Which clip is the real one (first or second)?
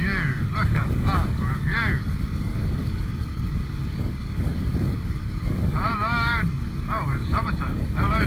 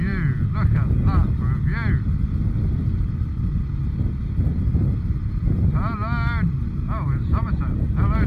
second